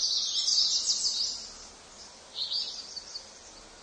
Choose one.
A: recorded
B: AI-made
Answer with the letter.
A